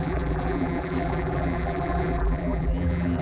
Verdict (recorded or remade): remade